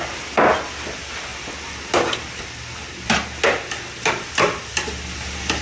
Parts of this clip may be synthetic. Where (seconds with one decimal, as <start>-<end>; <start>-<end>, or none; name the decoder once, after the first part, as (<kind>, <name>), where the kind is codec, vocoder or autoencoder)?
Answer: none